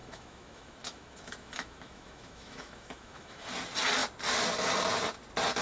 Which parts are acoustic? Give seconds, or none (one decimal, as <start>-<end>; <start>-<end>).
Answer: 3.4-5.6